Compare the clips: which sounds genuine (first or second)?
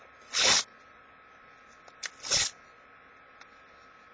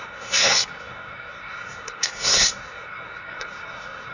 first